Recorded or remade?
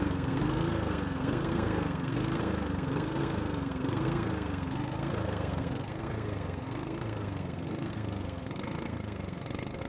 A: remade